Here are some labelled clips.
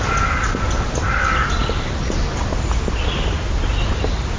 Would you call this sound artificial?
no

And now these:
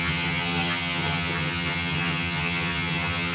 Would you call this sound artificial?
yes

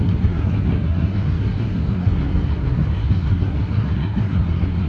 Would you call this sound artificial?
yes